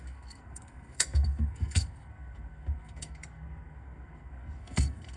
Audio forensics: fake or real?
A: fake